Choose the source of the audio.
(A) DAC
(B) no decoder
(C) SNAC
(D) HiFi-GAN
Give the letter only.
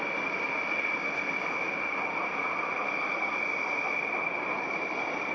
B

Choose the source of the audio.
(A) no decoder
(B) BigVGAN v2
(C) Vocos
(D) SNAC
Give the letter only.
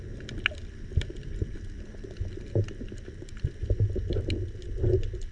A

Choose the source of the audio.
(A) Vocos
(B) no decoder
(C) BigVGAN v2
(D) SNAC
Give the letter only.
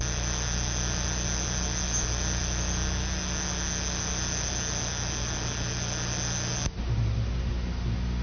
B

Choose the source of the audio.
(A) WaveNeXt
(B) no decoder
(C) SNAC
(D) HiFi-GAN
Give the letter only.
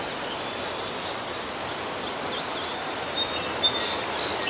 B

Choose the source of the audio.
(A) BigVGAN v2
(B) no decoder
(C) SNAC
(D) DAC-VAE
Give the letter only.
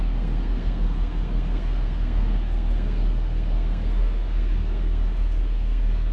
C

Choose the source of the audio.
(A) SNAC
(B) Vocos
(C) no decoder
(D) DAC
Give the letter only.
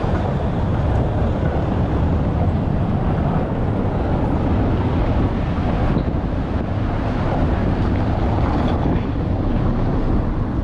C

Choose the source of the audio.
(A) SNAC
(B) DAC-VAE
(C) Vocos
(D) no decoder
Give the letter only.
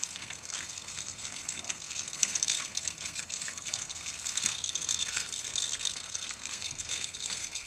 A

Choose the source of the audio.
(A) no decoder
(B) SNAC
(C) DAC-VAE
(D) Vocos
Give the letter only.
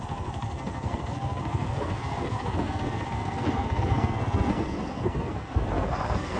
B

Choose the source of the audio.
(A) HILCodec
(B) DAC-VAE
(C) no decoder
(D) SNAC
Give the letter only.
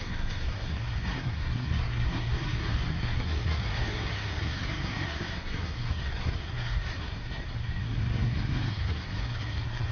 D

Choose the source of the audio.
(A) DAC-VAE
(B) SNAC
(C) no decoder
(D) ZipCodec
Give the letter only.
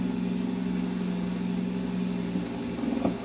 C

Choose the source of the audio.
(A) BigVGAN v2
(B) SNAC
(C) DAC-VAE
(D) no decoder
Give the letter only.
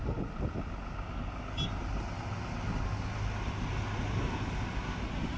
D